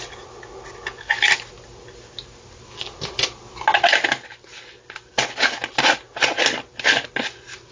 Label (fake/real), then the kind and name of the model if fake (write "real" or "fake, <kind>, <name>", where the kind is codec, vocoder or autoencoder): real